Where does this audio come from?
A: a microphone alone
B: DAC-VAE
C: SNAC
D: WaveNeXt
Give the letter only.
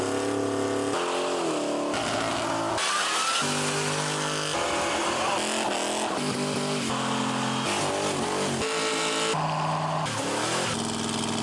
A